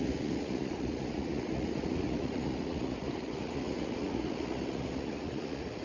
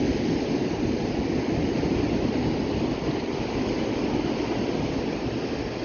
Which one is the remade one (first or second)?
first